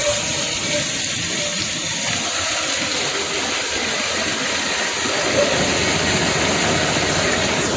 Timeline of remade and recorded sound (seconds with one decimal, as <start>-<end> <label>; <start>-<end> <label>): 0.0-7.8 recorded

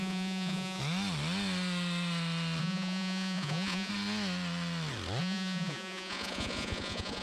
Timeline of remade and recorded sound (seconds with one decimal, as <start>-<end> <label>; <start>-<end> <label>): 0.0-0.8 remade; 0.8-2.6 recorded; 2.6-3.9 remade; 3.9-5.2 recorded; 5.2-7.2 remade

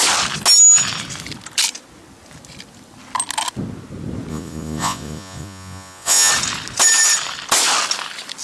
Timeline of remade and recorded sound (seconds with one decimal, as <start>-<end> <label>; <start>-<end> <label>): 0.0-4.3 recorded; 4.3-6.3 remade; 6.3-8.4 recorded

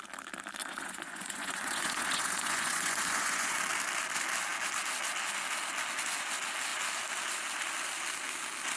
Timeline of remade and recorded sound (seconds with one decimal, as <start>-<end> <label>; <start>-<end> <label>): 0.0-0.6 recorded; 0.6-3.6 remade; 3.6-8.8 recorded